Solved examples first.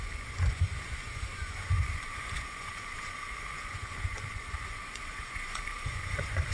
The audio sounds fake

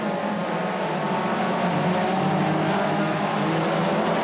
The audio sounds real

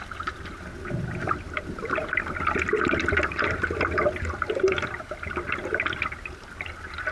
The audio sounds real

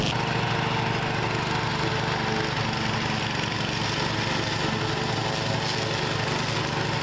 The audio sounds real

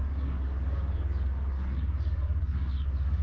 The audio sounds fake